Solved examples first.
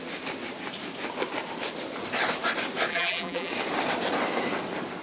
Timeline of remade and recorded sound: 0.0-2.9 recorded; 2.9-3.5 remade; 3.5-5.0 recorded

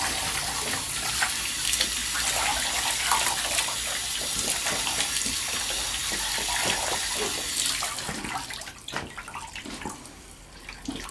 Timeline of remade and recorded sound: 0.0-11.1 recorded

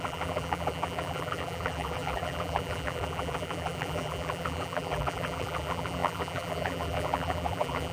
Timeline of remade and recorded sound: 0.0-7.9 remade